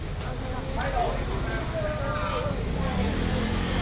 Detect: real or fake real